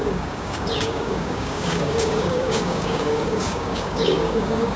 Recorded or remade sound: remade